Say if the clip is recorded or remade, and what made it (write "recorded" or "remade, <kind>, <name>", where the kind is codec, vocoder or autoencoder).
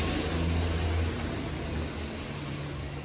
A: recorded